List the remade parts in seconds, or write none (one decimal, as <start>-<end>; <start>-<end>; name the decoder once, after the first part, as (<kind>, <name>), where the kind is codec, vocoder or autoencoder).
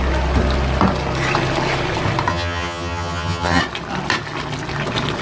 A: 2.3-3.6 (vocoder, HiFi-GAN)